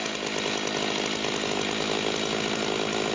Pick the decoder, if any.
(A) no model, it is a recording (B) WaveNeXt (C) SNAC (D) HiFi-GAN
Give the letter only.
A